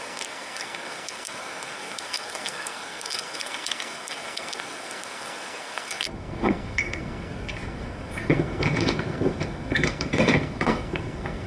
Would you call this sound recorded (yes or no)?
no